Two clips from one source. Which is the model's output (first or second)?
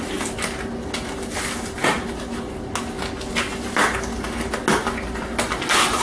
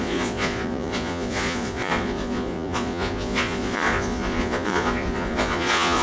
second